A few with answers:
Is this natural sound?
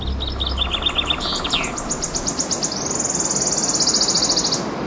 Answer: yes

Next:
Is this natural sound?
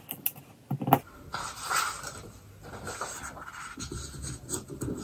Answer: yes